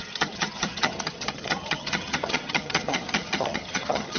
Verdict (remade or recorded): remade